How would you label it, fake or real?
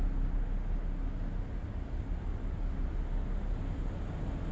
real